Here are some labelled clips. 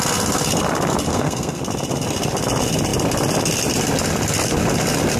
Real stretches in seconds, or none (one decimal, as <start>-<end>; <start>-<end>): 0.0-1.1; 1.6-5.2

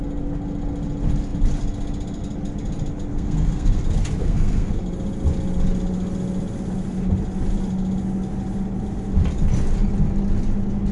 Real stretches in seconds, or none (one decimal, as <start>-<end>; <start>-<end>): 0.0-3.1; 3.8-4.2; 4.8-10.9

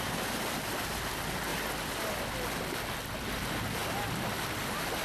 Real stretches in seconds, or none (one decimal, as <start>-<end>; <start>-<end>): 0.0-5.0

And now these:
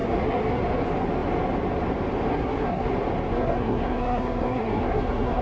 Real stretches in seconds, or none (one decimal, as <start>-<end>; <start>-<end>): 0.6-2.3; 2.9-3.3